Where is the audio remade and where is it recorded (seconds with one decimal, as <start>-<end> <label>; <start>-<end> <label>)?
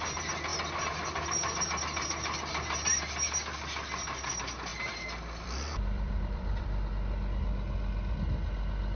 0.0-4.7 recorded; 4.7-6.9 remade; 6.9-9.0 recorded